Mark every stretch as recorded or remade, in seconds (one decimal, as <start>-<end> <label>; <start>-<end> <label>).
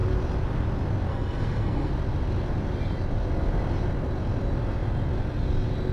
0.0-1.1 recorded; 1.1-1.9 remade; 1.9-5.9 recorded